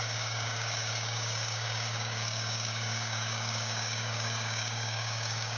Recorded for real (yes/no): no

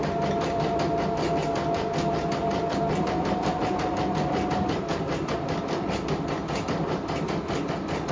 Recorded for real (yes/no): yes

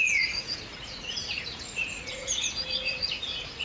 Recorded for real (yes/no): no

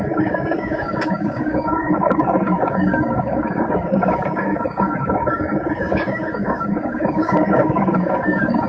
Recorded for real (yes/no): no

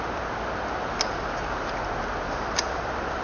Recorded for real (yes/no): yes